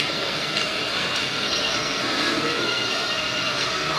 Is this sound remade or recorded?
remade